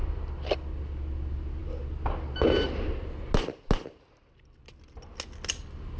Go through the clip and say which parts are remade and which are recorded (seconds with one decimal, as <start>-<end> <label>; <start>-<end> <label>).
0.0-6.0 recorded